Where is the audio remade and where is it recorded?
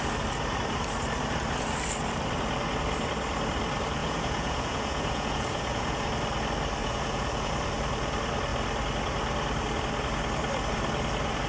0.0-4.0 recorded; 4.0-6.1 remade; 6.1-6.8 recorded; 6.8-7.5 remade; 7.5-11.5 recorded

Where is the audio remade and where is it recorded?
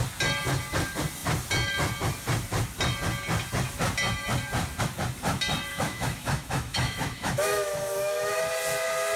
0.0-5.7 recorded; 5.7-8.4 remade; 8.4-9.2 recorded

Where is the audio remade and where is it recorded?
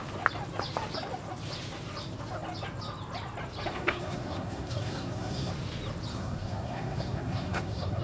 0.0-3.7 recorded; 3.7-5.5 remade; 5.5-6.1 recorded; 6.1-8.0 remade